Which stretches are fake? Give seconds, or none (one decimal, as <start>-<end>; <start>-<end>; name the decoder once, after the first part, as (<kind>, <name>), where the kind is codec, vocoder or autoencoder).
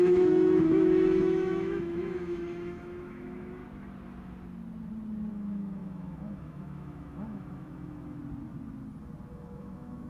0.0-3.6 (autoencoder, DAC-VAE); 5.3-8.2; 9.3-10.1